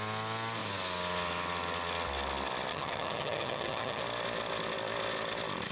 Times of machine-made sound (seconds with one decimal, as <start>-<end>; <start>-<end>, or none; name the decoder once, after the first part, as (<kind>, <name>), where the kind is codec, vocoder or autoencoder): 2.7-4.0 (vocoder, HiFi-GAN)